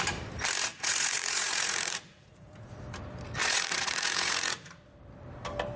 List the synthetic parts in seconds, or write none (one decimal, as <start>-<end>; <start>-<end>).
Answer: 0.7-2.8; 3.4-4.8